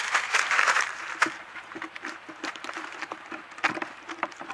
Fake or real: fake